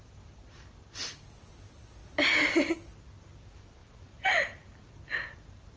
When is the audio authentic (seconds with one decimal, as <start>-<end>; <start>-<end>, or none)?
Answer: 0.0-3.8; 4.9-5.8